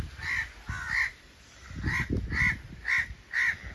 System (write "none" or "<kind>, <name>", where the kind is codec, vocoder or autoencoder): none